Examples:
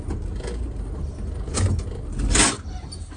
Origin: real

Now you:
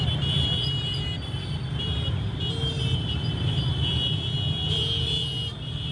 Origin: real